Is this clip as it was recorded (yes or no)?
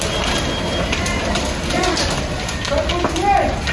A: yes